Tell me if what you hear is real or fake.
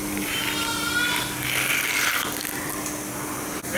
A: real